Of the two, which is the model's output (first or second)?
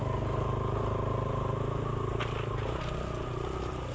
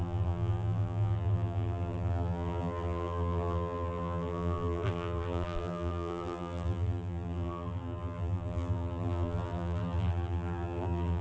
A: second